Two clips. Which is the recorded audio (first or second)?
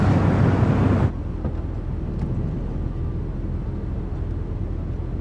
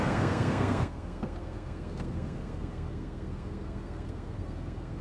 first